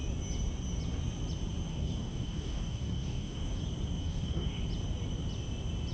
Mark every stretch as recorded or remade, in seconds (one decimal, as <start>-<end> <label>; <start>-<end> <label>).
0.0-1.7 recorded; 1.7-3.6 remade; 3.6-4.0 recorded; 4.0-4.6 remade; 4.6-5.9 recorded